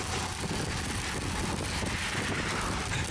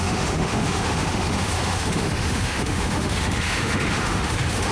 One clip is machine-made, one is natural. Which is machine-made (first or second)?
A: second